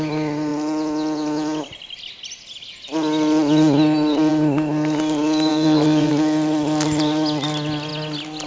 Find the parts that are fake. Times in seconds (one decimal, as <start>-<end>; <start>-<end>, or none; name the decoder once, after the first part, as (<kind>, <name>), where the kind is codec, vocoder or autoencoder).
5.5-6.1 (vocoder, WaveNeXt)